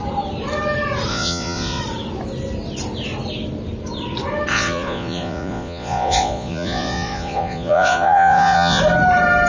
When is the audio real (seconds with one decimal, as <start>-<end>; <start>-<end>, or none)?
0.0-1.1; 1.8-4.5; 8.8-9.5